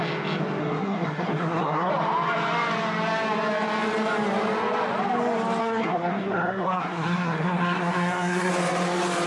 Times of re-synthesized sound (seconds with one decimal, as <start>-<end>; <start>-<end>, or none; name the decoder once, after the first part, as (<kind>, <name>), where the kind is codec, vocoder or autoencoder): 0.6-1.9 (codec, SNAC); 5.6-8.5